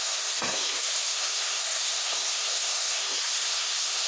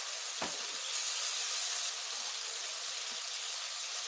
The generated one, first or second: first